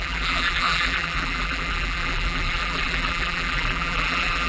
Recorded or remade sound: remade